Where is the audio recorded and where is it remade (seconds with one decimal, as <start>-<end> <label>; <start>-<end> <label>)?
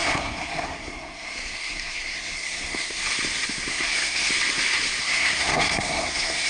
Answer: 0.0-3.0 remade; 3.0-3.7 recorded; 3.7-4.3 remade; 4.3-5.0 recorded; 5.0-6.5 remade